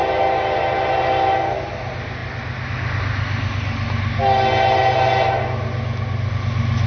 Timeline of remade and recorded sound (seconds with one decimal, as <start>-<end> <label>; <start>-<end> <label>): 0.0-6.9 recorded